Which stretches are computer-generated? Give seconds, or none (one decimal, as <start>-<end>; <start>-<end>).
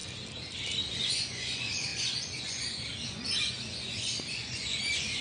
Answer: 1.0-5.2